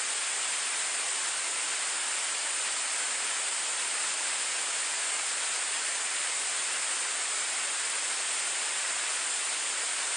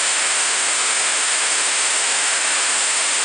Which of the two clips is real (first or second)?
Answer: first